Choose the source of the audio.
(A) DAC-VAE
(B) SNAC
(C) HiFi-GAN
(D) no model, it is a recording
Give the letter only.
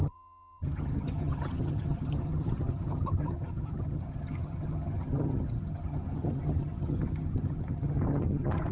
C